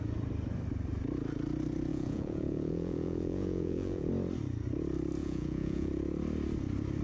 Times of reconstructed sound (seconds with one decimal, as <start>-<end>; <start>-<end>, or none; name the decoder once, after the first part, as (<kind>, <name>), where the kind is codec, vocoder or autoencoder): 1.9-4.1 (vocoder, Vocos); 5.2-5.9

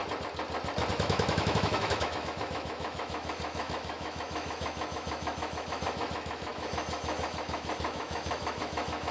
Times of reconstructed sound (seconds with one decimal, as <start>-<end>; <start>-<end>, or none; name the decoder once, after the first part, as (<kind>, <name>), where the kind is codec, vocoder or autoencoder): 0.9-9.1 (autoencoder, DAC-VAE)

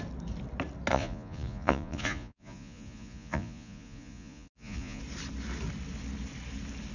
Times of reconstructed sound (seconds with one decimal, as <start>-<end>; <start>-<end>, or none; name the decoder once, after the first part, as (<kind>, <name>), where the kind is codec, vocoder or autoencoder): 0.9-5.0 (vocoder, Vocos)

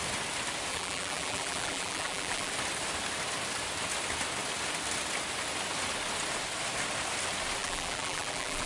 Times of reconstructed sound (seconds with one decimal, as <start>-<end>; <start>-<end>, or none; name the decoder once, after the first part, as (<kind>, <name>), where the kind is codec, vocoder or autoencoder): 0.7-2.5 (vocoder, BigVGAN v2); 7.6-8.7

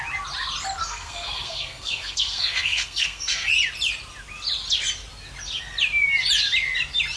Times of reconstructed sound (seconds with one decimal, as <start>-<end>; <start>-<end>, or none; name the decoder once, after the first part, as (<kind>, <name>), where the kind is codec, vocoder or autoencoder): 0.8-3.5 (codec, SNAC)

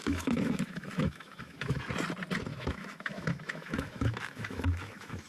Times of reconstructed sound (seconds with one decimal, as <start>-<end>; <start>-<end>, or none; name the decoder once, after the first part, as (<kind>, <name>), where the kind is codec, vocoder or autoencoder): 0.0-1.8 (autoencoder, DAC-VAE); 2.5-5.3

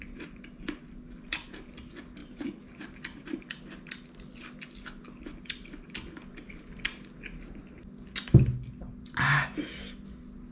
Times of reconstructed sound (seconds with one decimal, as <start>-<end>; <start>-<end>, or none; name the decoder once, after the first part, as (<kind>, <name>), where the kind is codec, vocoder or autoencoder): 2.2-3.3 (vocoder, BigVGAN v2)

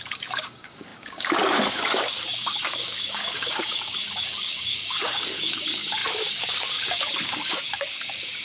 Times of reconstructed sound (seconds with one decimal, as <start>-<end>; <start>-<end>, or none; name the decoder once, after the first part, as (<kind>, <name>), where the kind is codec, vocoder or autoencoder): 0.0-8.4 (codec, DAC)